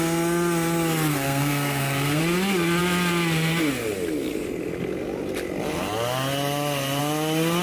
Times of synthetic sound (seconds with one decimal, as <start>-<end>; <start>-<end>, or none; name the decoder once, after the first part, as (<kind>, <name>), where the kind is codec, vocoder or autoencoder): 1.1-2.2 (codec, SNAC)